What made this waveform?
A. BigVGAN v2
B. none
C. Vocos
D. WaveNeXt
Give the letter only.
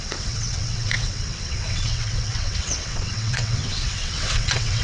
D